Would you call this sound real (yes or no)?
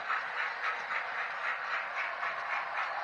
yes